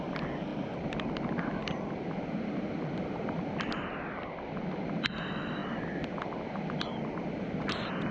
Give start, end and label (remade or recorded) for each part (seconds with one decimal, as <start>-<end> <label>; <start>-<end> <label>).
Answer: 0.0-8.1 recorded